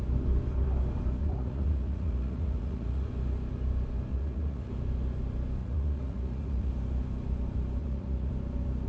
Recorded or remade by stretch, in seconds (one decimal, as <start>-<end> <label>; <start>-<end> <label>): 0.0-1.2 recorded; 1.2-3.1 remade; 3.1-4.1 recorded; 4.1-4.7 remade; 4.7-5.6 recorded; 5.6-6.7 remade; 6.7-7.8 recorded; 7.8-8.3 remade; 8.3-8.9 recorded